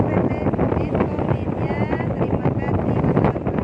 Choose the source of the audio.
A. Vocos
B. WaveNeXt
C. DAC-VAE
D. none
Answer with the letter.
D